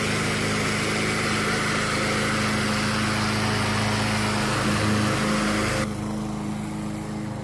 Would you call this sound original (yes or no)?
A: yes